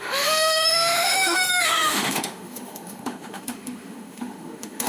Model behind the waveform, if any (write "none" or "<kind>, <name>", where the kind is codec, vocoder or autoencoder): autoencoder, DAC-VAE